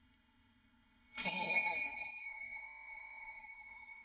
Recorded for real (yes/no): no